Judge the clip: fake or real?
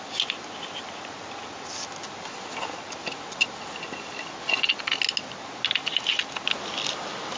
real